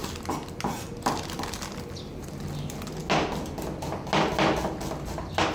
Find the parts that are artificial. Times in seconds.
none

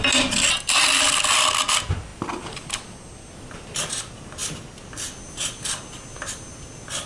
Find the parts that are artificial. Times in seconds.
none